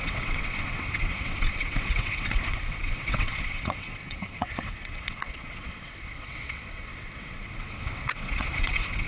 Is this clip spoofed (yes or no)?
yes